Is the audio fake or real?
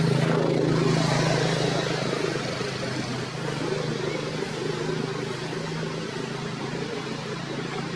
real